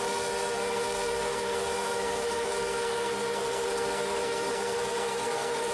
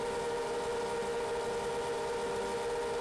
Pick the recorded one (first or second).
second